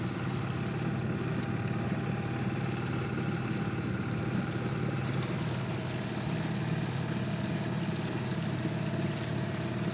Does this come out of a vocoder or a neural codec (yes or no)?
no